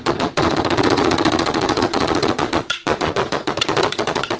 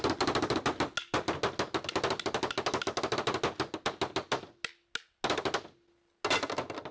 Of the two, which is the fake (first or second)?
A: first